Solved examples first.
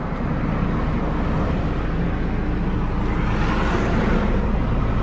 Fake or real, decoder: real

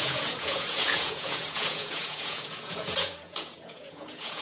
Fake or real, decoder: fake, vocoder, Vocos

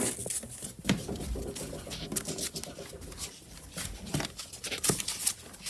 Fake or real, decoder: real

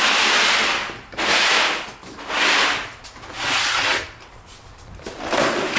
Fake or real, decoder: real